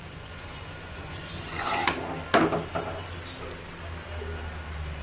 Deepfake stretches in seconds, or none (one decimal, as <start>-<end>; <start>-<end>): 0.0-1.8

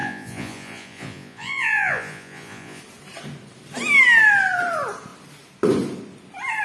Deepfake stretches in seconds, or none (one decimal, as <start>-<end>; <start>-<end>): 0.0-2.8